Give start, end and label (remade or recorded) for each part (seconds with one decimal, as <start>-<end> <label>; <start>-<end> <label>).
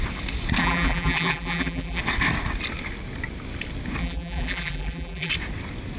0.0-0.6 recorded; 0.6-2.0 remade; 2.0-4.0 recorded; 4.0-5.3 remade; 5.3-6.0 recorded